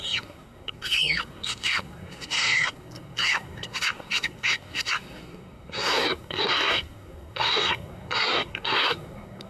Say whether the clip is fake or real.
fake